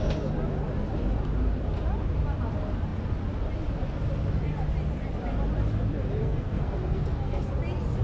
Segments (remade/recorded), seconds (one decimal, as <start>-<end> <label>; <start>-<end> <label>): 0.0-6.2 recorded; 6.2-7.5 remade; 7.5-8.0 recorded